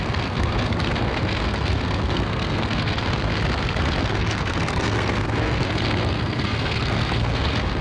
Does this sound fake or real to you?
fake